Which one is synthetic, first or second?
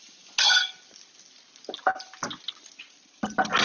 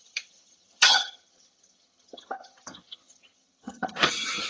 second